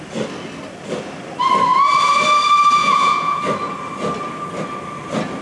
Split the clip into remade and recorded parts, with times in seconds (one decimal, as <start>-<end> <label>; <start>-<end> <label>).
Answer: 0.0-2.8 recorded; 2.8-3.4 remade; 3.4-5.4 recorded